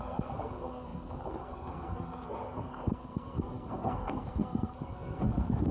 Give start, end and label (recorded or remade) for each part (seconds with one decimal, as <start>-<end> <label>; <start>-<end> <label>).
0.0-5.7 remade